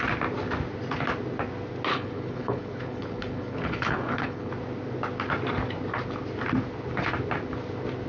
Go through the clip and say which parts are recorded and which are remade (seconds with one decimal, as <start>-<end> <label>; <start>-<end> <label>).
0.0-1.9 recorded; 1.9-4.5 remade; 4.5-8.1 recorded